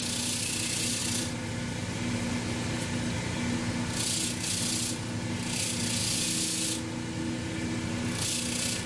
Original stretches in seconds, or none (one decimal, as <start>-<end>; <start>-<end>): 0.0-8.9